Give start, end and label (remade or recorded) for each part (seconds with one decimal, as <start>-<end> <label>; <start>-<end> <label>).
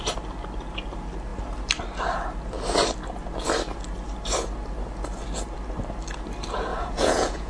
0.0-6.7 recorded; 6.7-7.5 remade